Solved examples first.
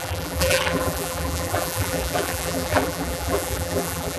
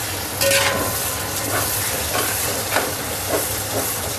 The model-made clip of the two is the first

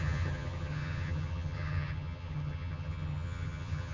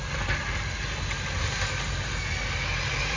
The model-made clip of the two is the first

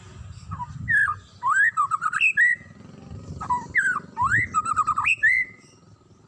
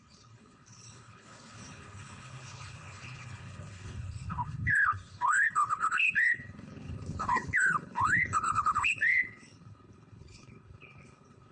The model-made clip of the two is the second